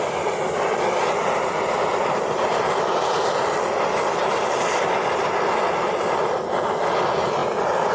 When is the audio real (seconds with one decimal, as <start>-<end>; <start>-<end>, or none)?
0.0-1.2; 3.3-4.2; 4.9-7.9